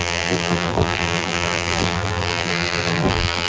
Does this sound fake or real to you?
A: fake